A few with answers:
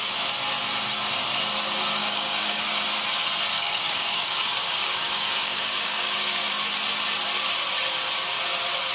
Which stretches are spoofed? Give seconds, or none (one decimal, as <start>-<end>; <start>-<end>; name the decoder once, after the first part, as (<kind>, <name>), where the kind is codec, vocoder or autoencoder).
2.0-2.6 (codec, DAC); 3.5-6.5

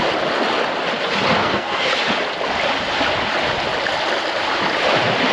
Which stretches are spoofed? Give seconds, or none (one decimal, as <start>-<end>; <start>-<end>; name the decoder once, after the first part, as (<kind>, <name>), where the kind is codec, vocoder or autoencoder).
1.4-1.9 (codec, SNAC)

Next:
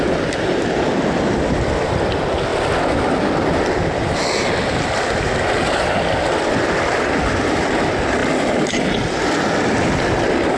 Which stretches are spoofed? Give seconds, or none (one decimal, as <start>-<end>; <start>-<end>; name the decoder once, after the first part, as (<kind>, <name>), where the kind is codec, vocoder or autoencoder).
none

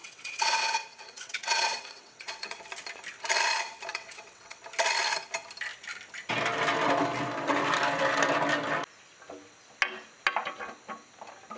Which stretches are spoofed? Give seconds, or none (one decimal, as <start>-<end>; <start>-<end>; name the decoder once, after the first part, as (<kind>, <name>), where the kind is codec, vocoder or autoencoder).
0.0-2.6 (vocoder, WaveNeXt); 3.9-4.6

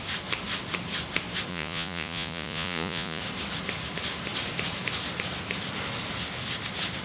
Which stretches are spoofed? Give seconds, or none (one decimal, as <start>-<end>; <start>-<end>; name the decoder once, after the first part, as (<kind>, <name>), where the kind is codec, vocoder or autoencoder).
1.5-3.2 (vocoder, Vocos)